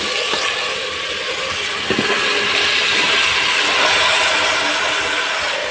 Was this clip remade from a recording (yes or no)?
no